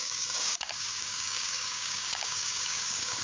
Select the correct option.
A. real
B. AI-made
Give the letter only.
B